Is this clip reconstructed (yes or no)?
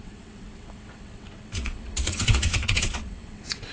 yes